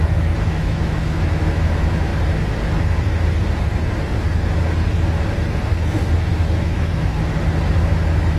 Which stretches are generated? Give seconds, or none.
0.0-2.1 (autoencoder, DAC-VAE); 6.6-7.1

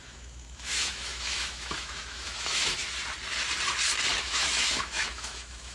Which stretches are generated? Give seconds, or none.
0.0-2.8 (autoencoder, DAC-VAE); 4.2-5.7

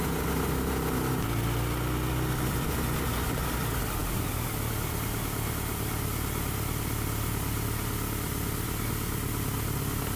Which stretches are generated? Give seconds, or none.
none

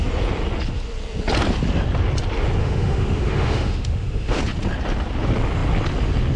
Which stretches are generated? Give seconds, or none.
2.6-4.4 (autoencoder, DAC-VAE)

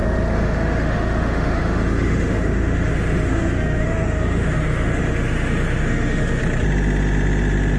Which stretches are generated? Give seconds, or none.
0.0-6.4 (autoencoder, DAC-VAE)